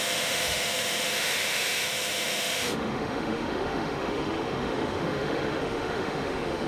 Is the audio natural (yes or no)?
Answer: no